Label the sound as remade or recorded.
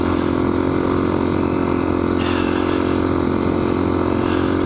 recorded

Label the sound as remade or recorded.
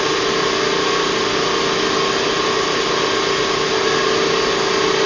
recorded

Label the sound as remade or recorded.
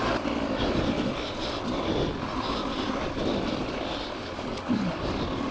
remade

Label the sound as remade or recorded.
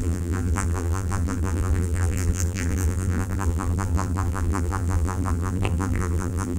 remade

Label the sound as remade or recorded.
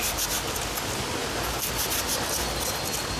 recorded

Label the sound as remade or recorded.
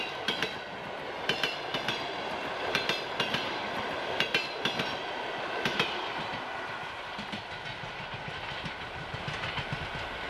remade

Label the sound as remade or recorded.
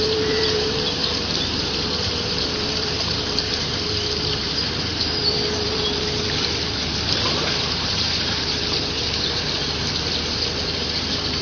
remade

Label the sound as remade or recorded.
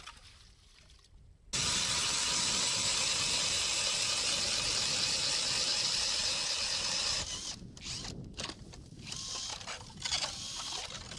recorded